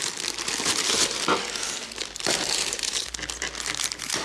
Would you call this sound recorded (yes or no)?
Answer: yes